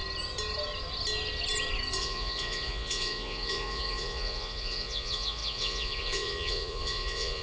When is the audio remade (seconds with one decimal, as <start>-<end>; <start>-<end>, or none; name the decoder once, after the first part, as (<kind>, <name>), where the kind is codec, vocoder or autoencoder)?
2.0-7.4 (vocoder, Vocos)